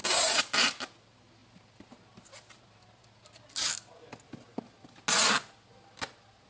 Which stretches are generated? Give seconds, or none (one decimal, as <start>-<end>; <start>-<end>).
none